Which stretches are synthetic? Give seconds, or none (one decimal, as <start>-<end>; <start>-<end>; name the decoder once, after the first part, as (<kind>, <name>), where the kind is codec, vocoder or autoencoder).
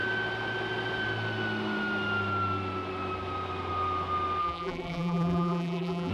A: 4.4-6.1 (vocoder, BigVGAN v2)